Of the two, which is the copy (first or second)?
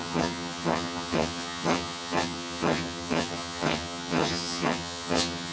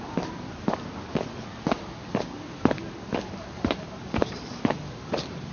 first